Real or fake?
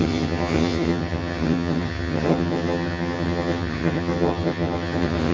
fake